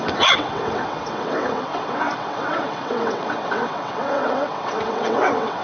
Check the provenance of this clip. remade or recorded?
remade